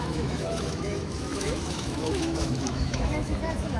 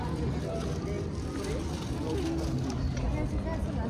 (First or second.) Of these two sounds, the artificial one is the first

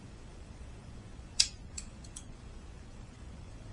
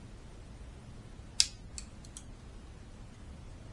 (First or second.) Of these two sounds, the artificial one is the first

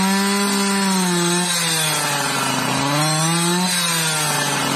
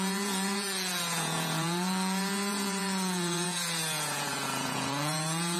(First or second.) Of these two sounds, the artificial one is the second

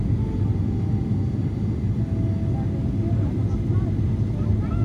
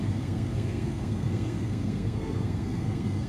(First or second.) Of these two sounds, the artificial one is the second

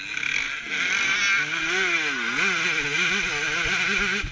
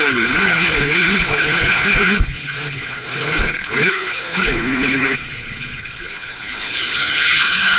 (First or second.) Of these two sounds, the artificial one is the second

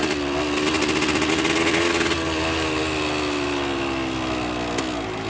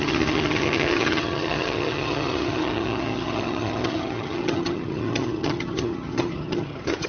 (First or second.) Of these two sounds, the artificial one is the second